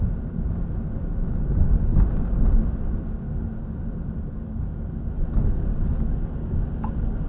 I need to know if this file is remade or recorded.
recorded